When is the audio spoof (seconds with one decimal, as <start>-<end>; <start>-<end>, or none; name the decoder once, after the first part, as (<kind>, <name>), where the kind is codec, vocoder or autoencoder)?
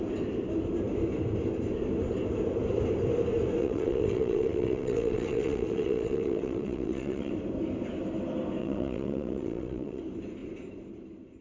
3.6-7.3 (vocoder, WaveNeXt); 8.6-10.0